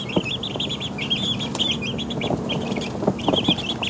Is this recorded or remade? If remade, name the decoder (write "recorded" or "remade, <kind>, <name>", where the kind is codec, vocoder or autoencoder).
recorded